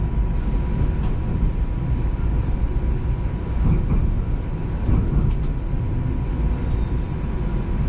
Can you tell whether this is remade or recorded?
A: recorded